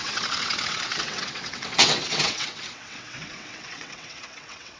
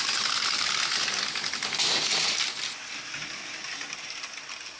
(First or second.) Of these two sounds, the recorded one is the second